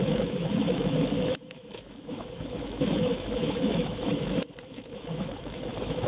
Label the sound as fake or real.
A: fake